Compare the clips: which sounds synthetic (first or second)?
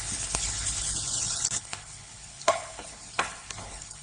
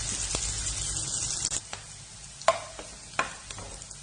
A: first